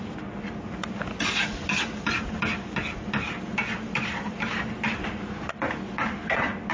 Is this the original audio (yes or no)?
yes